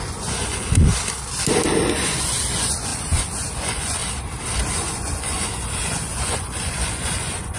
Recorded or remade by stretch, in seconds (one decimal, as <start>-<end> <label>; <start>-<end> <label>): 0.0-0.9 remade; 0.9-1.9 recorded; 1.9-4.0 remade; 4.0-4.7 recorded; 4.7-7.6 remade